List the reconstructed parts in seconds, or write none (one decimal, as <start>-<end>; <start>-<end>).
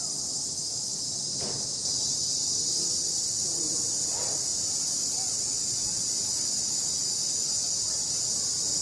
0.0-0.9; 2.0-8.8